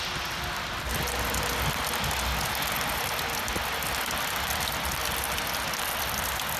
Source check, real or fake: real